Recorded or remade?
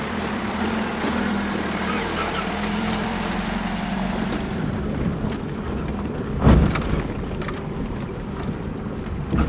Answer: remade